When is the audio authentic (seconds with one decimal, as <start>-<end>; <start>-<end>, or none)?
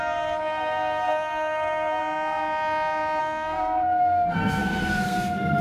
2.0-3.2